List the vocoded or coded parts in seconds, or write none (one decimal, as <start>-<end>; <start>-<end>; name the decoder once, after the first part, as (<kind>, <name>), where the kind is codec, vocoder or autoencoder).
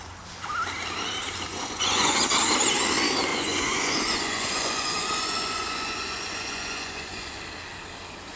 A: 1.5-2.2 (vocoder, Vocos); 3.3-7.4